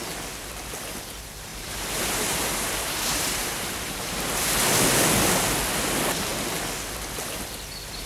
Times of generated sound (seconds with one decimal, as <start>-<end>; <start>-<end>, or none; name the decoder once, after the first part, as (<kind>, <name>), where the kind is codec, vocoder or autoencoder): 1.5-4.5 (vocoder, BigVGAN v2)